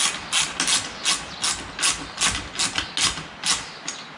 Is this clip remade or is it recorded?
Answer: recorded